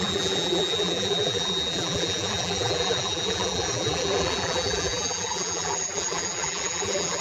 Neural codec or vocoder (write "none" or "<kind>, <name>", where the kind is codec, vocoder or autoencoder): vocoder, BigVGAN v2